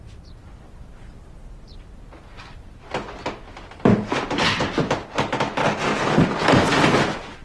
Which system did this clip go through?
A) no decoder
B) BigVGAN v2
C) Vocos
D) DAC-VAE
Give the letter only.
A